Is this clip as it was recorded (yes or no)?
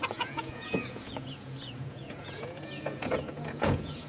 no